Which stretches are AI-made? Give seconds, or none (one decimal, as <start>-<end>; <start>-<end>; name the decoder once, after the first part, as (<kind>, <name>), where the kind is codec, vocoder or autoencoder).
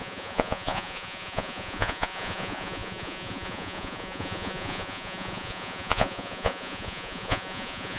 0.0-8.0 (vocoder, Vocos)